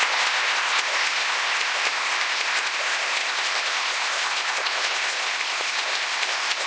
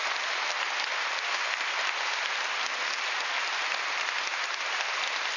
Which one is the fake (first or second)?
first